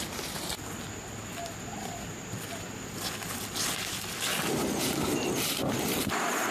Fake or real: real